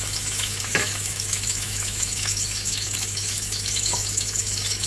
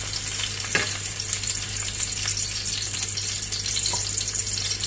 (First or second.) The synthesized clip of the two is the first